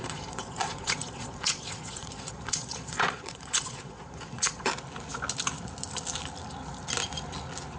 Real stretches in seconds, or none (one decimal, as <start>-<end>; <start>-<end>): 4.7-7.8